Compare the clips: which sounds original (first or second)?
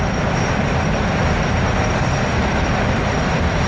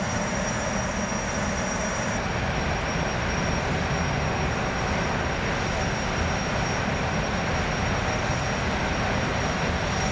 second